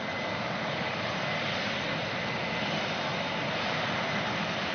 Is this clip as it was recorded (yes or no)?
yes